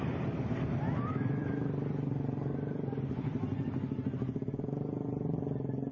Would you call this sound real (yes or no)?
yes